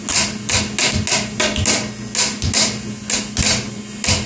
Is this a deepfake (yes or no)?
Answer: no